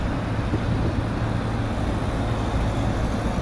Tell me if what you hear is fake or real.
real